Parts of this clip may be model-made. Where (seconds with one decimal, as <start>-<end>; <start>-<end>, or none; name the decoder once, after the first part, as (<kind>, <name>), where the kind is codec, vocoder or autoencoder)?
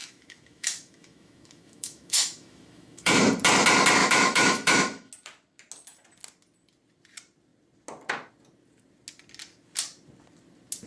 0.0-3.2 (autoencoder, DAC-VAE); 4.0-5.1